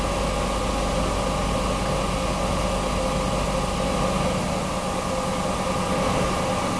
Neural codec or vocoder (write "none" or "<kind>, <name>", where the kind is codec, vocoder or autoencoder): none